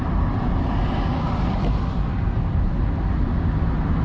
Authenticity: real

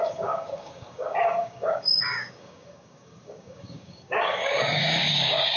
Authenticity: fake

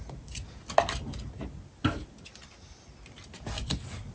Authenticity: real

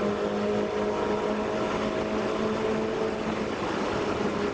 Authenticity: real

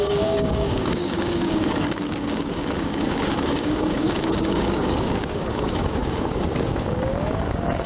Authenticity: fake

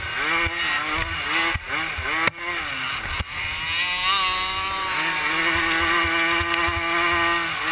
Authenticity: real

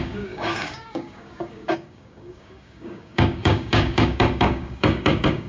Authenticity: fake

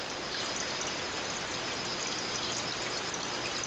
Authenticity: real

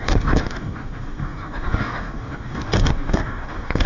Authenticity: fake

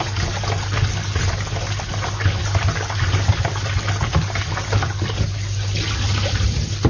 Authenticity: real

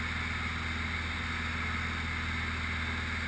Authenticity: real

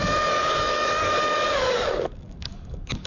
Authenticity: fake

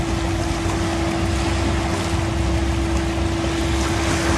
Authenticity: real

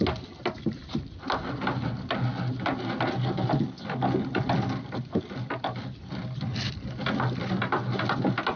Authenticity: real